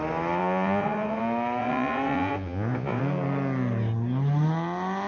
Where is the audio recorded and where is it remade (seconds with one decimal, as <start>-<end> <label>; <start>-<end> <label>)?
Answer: 0.0-0.4 recorded; 0.4-1.2 remade; 1.2-1.6 recorded; 1.6-3.0 remade; 3.0-5.1 recorded